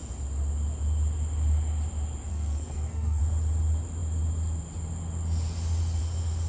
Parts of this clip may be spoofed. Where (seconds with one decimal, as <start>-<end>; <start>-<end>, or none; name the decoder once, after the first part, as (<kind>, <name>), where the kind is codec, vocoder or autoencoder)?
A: 2.3-3.2 (codec, SNAC)